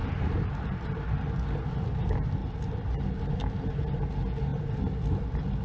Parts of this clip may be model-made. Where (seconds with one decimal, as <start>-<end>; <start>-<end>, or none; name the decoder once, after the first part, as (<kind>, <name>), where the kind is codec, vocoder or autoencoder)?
none